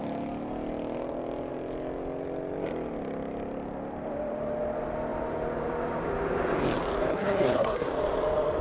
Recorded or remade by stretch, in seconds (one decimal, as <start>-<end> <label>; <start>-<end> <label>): 0.0-7.1 recorded; 7.1-7.9 remade; 7.9-8.6 recorded